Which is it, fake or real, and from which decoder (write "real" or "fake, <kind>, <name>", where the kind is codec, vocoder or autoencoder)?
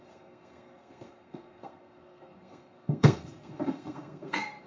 fake, codec, SNAC